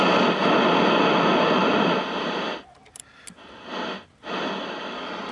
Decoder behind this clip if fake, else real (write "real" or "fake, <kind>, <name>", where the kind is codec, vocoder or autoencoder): real